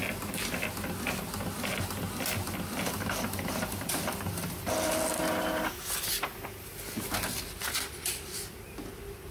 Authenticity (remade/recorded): recorded